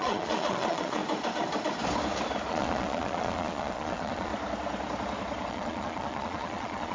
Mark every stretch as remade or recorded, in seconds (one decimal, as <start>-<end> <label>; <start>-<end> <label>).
0.0-1.0 remade; 1.0-2.5 recorded; 2.5-4.3 remade; 4.3-5.5 recorded; 5.5-6.9 remade